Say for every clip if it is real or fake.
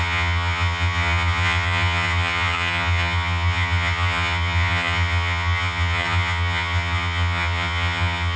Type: fake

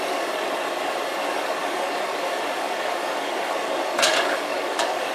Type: fake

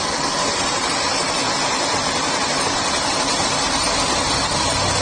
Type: real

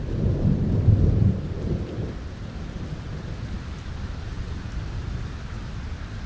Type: fake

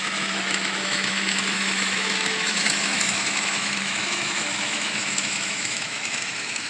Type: fake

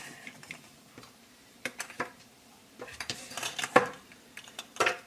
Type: fake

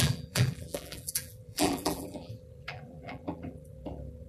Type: fake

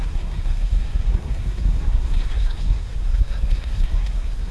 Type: fake